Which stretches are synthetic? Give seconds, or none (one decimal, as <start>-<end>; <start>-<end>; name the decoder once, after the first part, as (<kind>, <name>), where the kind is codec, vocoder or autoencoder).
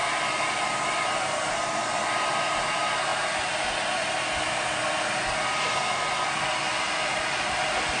none